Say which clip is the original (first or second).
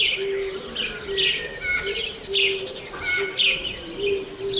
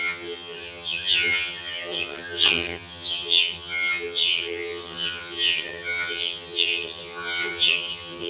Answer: first